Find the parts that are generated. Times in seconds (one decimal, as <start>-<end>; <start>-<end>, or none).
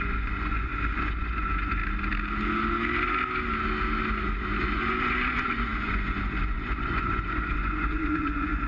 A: 0.0-1.8; 4.6-8.7